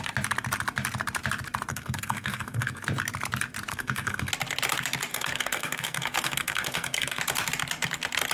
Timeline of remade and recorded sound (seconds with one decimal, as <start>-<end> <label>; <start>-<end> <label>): 0.0-1.7 recorded; 1.7-2.8 remade; 2.8-3.7 recorded; 3.7-4.3 remade; 4.3-5.1 recorded; 5.1-7.2 remade; 7.2-8.3 recorded